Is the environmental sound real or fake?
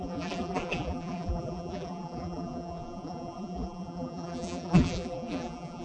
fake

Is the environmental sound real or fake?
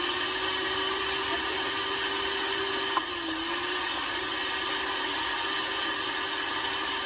real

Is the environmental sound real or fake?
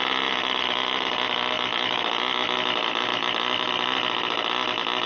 real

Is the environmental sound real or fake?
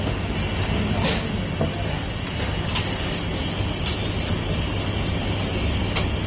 real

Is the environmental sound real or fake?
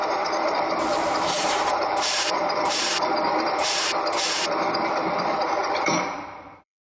fake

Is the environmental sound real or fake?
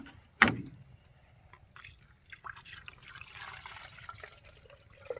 real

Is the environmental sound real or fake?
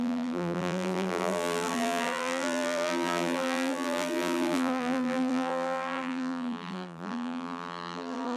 fake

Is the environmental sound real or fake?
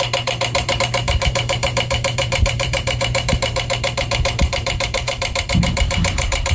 fake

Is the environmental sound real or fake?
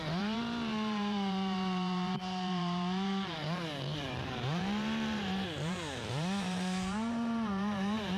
fake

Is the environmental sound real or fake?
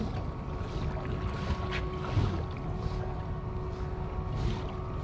real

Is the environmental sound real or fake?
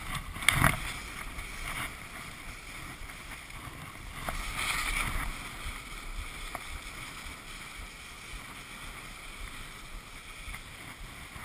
real